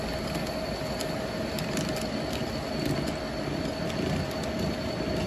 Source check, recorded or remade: recorded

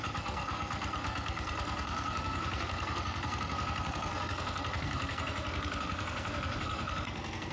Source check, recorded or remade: remade